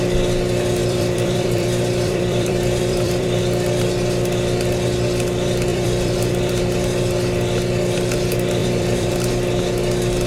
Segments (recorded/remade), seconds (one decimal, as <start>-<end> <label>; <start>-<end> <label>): 0.0-0.8 recorded; 0.8-3.4 remade; 3.4-5.7 recorded; 5.7-6.6 remade; 6.6-8.6 recorded; 8.6-9.3 remade; 9.3-10.3 recorded